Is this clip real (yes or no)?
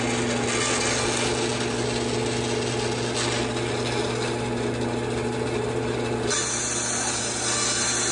yes